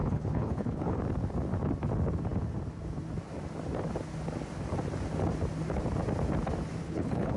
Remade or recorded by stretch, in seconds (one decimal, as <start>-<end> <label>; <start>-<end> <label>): 0.0-1.0 remade; 1.0-6.8 recorded; 6.8-7.4 remade